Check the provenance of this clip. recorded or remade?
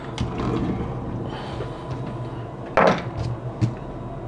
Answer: recorded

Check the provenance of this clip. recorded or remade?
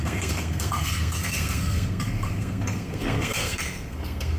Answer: remade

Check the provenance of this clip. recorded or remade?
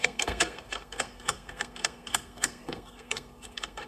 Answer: remade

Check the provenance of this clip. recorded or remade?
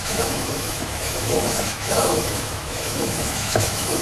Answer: remade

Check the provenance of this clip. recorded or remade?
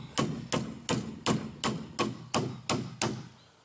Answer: recorded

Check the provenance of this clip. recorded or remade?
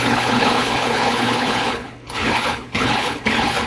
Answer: remade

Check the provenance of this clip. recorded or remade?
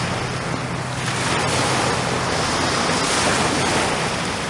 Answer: recorded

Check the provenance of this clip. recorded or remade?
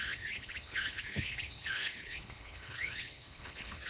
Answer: remade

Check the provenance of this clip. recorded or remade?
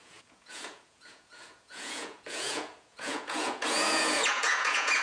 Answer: remade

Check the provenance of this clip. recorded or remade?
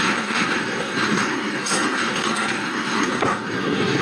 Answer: remade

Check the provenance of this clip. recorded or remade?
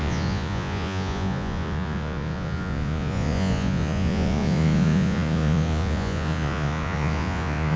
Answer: remade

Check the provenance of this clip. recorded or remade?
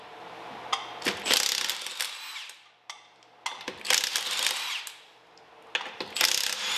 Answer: recorded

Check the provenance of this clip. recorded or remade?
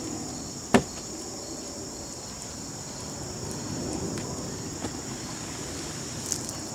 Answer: recorded